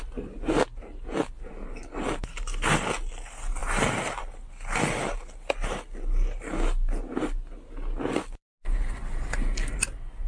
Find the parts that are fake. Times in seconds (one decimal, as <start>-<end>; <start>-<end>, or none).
none